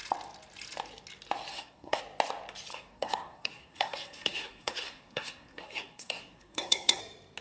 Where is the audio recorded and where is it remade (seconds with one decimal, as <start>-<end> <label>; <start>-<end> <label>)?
0.0-1.5 recorded; 1.5-2.0 remade; 2.0-2.7 recorded; 2.7-7.0 remade; 7.0-7.4 recorded